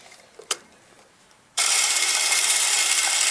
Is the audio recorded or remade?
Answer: remade